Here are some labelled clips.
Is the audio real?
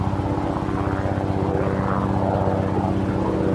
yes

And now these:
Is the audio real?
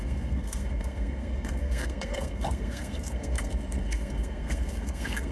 no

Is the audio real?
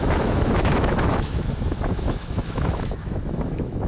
no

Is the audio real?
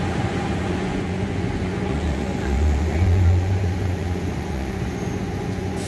no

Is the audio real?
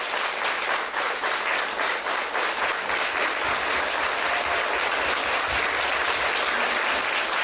yes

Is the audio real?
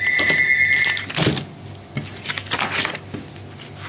yes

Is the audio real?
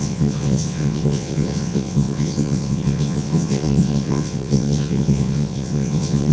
no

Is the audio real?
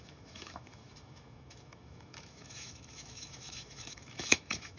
no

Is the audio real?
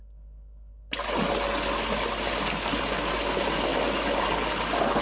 yes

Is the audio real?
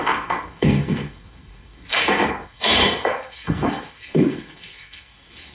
no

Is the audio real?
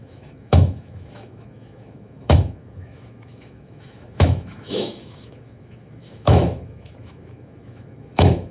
no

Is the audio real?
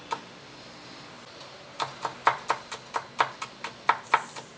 yes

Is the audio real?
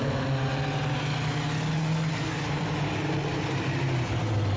yes